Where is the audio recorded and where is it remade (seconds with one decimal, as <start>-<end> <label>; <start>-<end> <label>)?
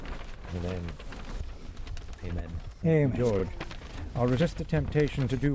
0.0-5.5 recorded